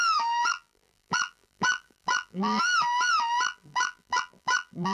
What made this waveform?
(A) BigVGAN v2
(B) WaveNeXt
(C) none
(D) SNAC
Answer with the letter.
A